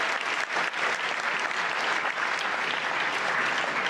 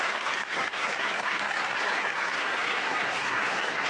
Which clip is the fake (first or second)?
second